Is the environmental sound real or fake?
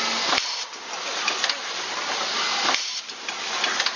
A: real